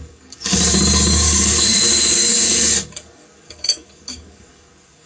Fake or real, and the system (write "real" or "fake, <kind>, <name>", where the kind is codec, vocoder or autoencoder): fake, codec, DAC